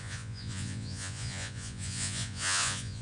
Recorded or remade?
remade